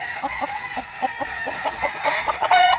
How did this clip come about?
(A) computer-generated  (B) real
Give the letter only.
A